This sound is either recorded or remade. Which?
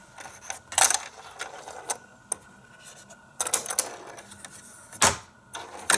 recorded